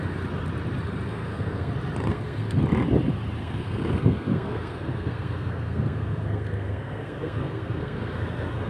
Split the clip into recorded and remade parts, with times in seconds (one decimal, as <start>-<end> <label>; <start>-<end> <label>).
0.0-1.1 recorded; 1.1-1.7 remade; 1.7-2.1 recorded; 2.1-2.6 remade; 2.6-3.4 recorded; 3.4-8.7 remade